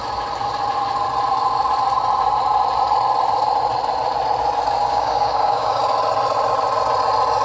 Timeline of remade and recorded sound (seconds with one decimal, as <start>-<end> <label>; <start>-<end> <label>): 0.0-4.8 recorded; 4.8-5.8 remade; 5.8-7.4 recorded